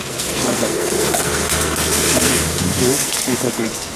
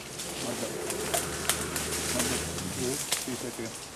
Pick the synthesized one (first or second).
first